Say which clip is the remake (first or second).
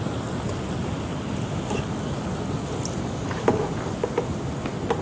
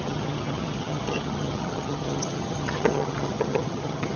second